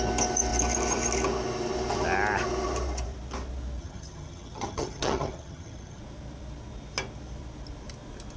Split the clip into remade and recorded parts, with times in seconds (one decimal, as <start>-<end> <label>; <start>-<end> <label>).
0.0-3.8 recorded; 3.8-6.0 remade; 6.0-8.4 recorded